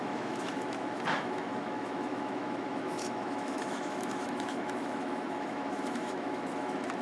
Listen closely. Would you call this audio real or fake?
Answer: fake